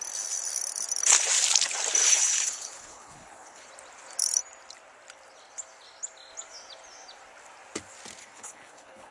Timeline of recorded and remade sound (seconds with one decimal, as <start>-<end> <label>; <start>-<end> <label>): 0.0-2.0 recorded; 2.0-3.7 remade; 3.7-8.2 recorded; 8.2-9.1 remade